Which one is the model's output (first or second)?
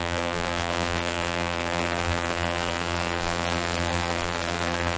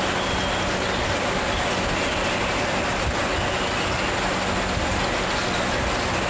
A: first